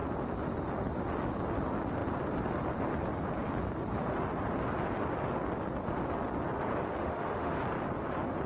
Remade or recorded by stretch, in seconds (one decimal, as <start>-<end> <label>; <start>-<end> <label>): 0.0-7.0 recorded; 7.0-7.6 remade; 7.6-8.5 recorded